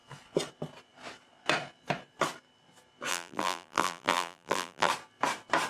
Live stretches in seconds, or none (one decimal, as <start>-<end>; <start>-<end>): 0.0-3.1; 4.9-5.7